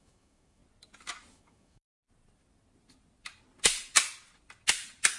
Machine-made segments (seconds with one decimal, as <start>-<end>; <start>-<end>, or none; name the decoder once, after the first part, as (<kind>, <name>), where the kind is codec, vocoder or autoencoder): 0.0-0.6 (autoencoder, DAC-VAE); 1.3-1.9